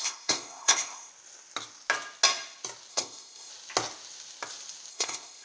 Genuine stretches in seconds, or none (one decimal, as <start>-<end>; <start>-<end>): 1.1-2.9; 3.5-4.9